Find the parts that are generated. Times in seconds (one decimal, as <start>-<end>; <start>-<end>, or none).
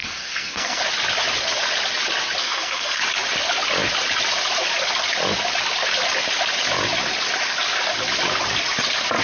0.0-0.8; 2.4-3.0